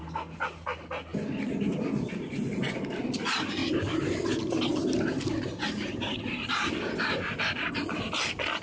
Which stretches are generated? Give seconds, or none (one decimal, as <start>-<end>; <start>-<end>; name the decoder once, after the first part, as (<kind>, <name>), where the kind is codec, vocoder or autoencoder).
none